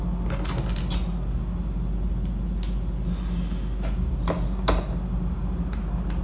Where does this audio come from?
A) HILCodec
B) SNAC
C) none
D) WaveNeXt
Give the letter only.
C